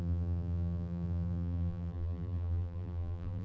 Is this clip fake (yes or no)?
yes